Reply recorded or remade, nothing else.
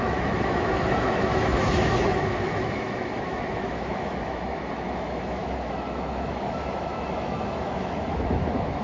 remade